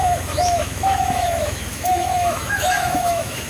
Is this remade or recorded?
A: remade